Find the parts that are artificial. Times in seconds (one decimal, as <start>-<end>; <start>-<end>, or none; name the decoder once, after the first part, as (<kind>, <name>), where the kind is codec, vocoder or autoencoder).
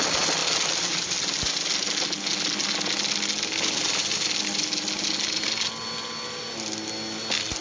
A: none